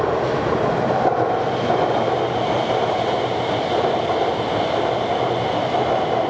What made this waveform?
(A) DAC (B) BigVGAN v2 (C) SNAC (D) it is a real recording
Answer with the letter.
D